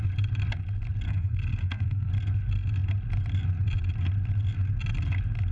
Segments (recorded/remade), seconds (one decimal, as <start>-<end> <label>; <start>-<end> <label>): 0.0-1.1 recorded; 1.1-2.1 remade; 2.1-5.5 recorded